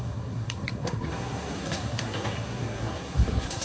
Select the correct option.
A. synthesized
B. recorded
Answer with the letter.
A